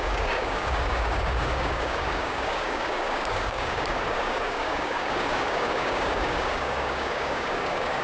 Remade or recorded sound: remade